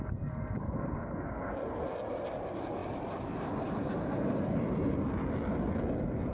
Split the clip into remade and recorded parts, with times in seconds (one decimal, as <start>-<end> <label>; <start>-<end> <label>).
0.0-2.8 recorded; 2.8-4.9 remade; 4.9-6.3 recorded